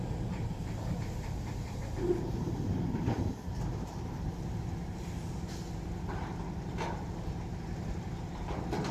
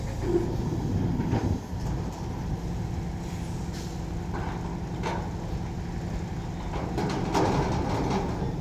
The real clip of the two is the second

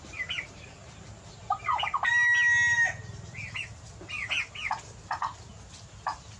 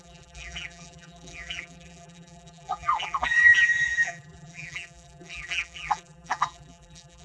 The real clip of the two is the first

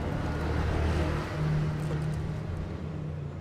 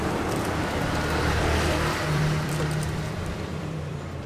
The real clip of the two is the first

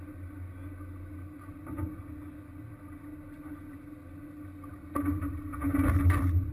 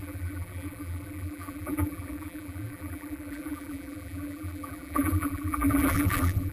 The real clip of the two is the first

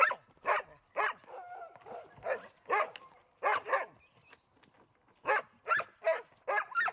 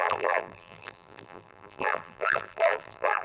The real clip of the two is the first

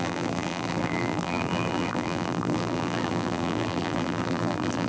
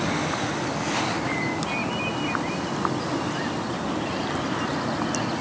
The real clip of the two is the second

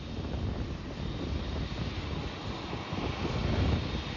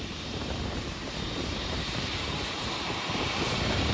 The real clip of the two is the first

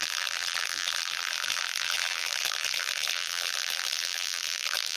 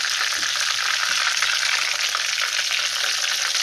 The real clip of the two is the second